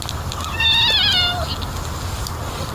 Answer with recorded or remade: recorded